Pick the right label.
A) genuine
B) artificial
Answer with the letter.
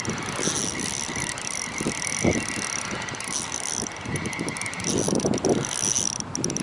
A